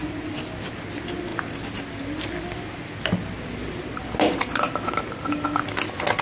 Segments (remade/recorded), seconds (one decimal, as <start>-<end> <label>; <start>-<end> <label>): 0.0-6.2 recorded